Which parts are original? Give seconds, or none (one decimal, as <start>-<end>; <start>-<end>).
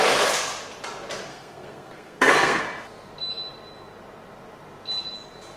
0.0-1.3; 2.6-5.6